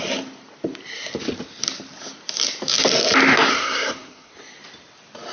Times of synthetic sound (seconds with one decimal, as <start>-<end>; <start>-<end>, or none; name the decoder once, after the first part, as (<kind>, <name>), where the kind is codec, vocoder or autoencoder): 3.5-4.3 (codec, SNAC)